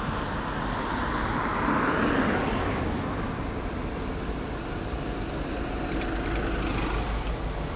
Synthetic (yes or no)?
no